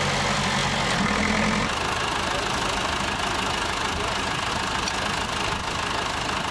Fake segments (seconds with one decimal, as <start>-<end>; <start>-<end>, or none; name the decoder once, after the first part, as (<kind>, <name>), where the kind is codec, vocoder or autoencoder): none